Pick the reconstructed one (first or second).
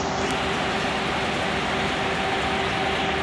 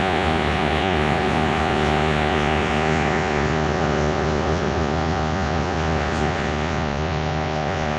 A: second